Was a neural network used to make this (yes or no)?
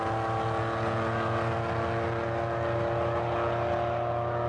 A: no